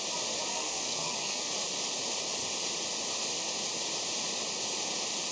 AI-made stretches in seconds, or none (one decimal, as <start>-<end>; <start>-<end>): 0.5-1.5